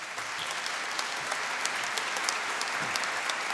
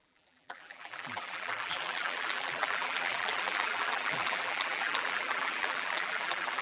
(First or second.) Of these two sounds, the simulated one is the second